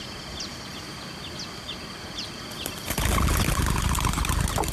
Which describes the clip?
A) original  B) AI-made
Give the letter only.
A